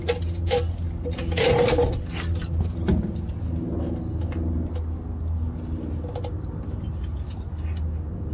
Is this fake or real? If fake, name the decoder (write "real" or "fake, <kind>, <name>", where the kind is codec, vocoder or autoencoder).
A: real